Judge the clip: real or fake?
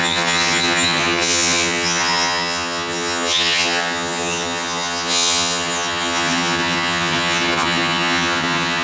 fake